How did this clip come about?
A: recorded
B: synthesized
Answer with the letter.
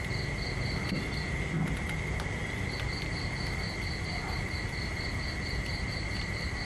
B